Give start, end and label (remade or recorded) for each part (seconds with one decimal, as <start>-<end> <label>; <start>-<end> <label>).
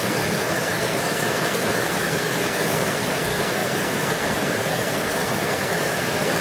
0.0-6.4 remade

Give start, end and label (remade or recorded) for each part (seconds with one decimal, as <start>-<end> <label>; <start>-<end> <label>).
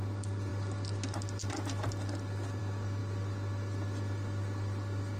0.0-5.2 recorded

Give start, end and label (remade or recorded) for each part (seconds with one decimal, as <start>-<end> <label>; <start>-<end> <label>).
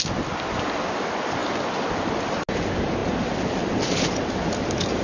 0.0-5.0 recorded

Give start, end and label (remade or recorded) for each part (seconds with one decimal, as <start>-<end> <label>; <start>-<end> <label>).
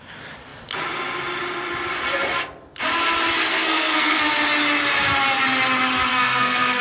0.0-3.5 recorded; 3.5-4.2 remade; 4.2-6.1 recorded; 6.1-6.8 remade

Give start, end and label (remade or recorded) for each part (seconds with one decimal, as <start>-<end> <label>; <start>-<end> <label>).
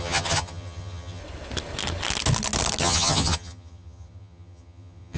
0.0-1.2 remade; 1.2-2.8 recorded; 2.8-5.2 remade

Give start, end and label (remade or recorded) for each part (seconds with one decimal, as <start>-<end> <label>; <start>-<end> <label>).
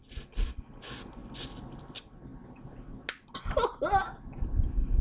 0.0-5.0 recorded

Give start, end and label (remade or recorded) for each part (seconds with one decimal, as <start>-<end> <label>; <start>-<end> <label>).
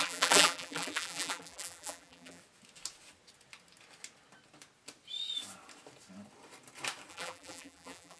0.0-2.4 remade; 2.4-7.1 recorded; 7.1-8.2 remade